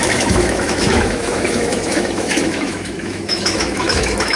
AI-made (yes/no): yes